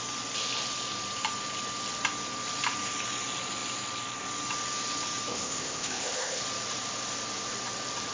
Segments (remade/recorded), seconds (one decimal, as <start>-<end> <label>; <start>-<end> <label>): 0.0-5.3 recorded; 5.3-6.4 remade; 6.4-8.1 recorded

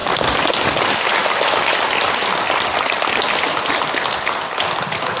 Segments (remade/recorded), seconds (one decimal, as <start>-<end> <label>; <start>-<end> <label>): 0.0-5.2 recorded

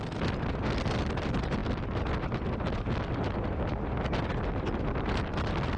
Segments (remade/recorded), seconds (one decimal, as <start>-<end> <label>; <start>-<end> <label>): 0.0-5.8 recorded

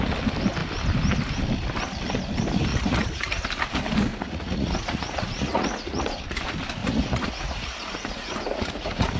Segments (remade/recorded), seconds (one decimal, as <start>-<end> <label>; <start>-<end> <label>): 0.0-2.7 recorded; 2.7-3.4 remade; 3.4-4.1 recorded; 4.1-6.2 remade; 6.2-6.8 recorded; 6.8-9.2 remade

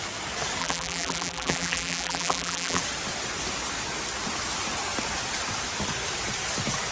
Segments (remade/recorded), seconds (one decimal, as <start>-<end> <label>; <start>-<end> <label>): 0.0-0.6 recorded; 0.6-2.8 remade; 2.8-6.9 recorded

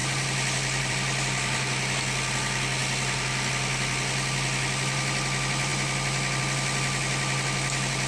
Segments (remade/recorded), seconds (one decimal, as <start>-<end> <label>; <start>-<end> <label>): 0.0-8.1 recorded